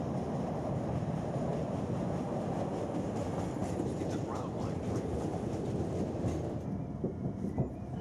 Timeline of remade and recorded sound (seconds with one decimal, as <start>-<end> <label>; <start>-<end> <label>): 0.0-3.6 recorded; 3.6-4.2 remade; 4.2-8.0 recorded